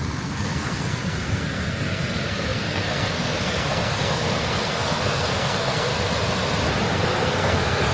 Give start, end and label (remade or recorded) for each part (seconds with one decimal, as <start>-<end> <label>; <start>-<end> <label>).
0.0-5.9 remade; 5.9-6.9 recorded; 6.9-7.9 remade